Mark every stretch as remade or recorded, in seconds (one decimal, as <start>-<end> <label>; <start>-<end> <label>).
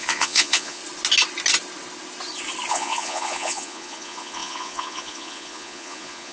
0.0-0.8 remade; 0.8-2.7 recorded; 2.7-6.3 remade